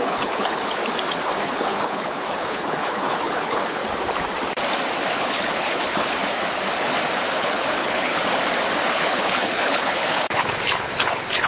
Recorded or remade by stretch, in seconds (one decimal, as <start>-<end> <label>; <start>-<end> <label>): 0.0-0.8 remade; 0.8-1.4 recorded; 1.4-3.8 remade; 3.8-5.1 recorded; 5.1-6.2 remade; 6.2-7.3 recorded; 7.3-8.2 remade; 8.2-8.9 recorded; 8.9-11.5 remade